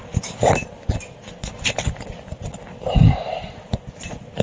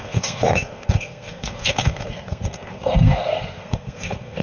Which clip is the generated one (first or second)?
second